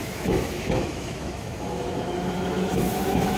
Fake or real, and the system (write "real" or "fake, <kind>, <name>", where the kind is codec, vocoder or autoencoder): fake, autoencoder, DAC-VAE